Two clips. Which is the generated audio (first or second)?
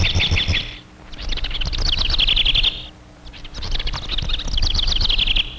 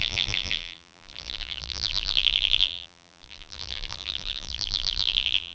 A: second